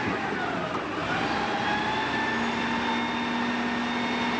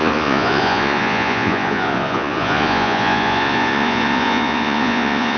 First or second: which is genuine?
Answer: first